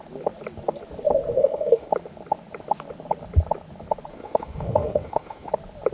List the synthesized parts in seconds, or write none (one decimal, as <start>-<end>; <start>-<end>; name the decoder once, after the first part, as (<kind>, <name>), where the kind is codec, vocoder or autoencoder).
1.4-1.9 (autoencoder, DAC-VAE); 4.1-5.5

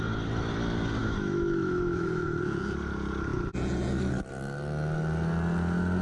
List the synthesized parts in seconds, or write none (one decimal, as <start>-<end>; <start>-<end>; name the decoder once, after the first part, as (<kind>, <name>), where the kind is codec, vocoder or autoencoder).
1.0-2.4 (autoencoder, DAC-VAE)

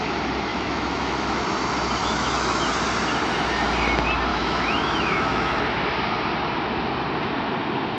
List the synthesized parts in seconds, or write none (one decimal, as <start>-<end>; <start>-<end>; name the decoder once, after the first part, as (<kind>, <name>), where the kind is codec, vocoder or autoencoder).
0.5-1.4 (autoencoder, DAC-VAE); 2.0-2.7; 4.3-5.6

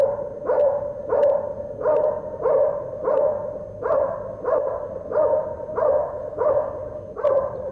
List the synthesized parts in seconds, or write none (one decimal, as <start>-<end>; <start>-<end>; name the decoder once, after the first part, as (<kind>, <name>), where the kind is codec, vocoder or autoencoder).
6.0-6.5 (autoencoder, DAC-VAE)

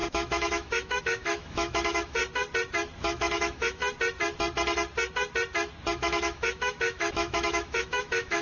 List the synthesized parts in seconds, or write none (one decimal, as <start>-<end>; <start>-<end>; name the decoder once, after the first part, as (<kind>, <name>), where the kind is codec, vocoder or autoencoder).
0.0-2.2 (autoencoder, DAC-VAE); 3.0-3.8; 5.9-8.4

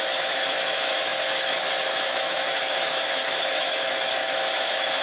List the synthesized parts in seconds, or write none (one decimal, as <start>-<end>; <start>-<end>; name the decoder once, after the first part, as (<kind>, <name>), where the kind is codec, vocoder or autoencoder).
0.0-5.0 (autoencoder, DAC-VAE)